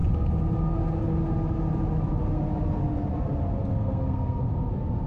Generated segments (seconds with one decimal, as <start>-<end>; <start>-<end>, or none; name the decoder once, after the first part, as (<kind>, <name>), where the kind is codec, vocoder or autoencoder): 3.7-4.4 (codec, SNAC)